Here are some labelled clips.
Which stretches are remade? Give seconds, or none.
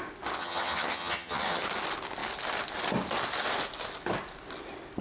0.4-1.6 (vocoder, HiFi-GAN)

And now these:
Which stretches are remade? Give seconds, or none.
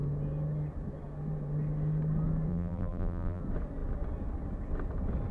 2.5-3.4 (vocoder, BigVGAN v2)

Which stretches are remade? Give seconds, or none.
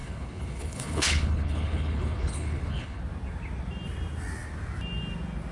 0.0-3.0 (codec, HILCodec)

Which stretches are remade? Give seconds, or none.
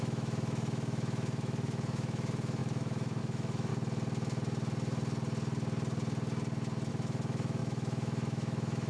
0.0-3.7 (autoencoder, DAC-VAE); 6.9-8.9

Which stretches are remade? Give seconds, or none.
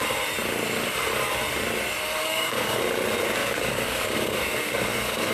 2.2-2.8 (codec, DAC); 3.4-5.3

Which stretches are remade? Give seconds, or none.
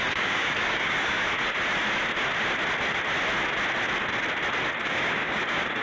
0.0-1.3 (codec, DAC); 4.8-5.8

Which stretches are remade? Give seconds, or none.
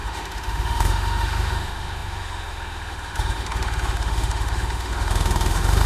0.0-5.9 (autoencoder, DAC-VAE)